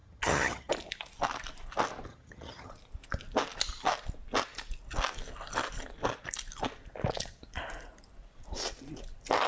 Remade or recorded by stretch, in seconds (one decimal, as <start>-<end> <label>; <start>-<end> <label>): 0.0-0.7 remade; 0.7-2.1 recorded; 2.1-2.7 remade; 2.7-9.5 recorded